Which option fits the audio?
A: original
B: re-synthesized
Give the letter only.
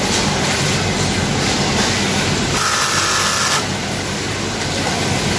A